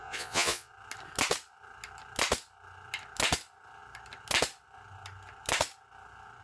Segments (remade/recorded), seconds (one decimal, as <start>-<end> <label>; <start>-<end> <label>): 0.0-0.7 remade; 0.7-6.4 recorded